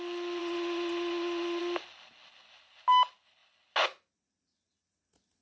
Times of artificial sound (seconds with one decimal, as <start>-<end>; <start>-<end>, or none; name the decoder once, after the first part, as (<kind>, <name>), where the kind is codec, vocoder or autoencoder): 0.4-1.6 (vocoder, Vocos)